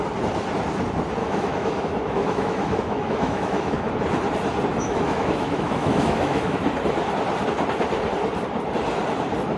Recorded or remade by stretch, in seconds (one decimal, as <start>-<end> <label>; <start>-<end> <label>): 0.0-1.2 recorded; 1.2-3.9 remade; 3.9-4.7 recorded; 4.7-6.6 remade; 6.6-9.6 recorded